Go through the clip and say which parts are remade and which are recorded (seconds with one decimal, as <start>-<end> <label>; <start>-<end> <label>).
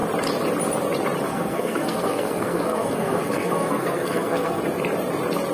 0.0-1.3 recorded; 1.3-4.6 remade; 4.6-5.5 recorded